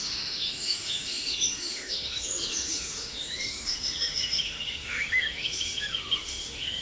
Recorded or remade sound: remade